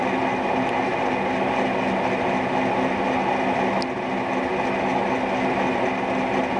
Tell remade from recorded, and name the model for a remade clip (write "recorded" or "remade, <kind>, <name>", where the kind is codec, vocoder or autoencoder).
recorded